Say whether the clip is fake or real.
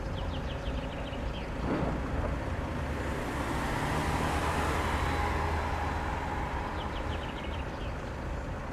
real